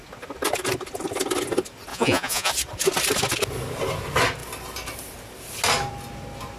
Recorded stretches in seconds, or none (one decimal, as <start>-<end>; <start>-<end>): 0.0-1.9; 2.5-6.6